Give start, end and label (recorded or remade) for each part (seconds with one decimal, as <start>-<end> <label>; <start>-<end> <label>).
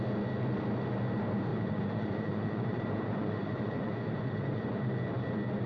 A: 0.0-1.5 recorded; 1.5-4.8 remade; 4.8-5.7 recorded